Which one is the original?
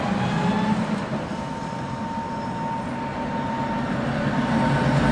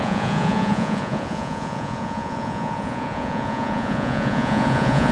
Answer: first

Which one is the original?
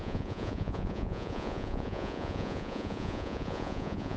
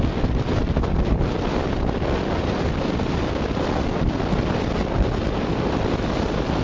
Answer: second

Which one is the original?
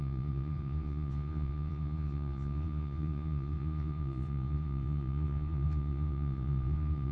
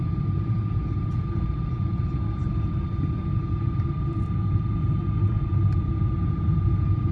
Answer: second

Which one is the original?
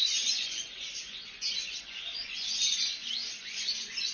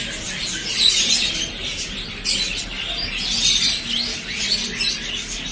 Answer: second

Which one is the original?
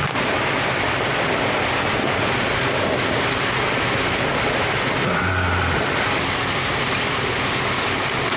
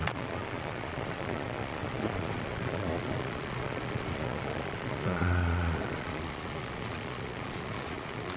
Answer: first